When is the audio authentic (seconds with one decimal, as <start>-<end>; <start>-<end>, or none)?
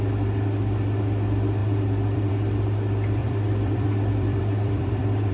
0.0-1.6; 2.3-3.2